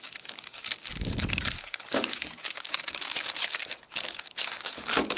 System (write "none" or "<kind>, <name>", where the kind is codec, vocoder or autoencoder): codec, DAC